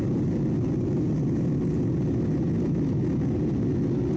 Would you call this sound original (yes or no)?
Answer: yes